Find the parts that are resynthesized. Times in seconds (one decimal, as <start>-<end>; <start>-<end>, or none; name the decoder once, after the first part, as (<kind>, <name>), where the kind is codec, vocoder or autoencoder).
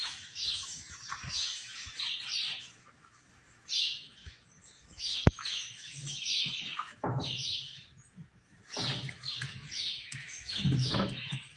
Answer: 0.0-1.9 (autoencoder, DAC-VAE); 2.6-8.6; 9.1-11.6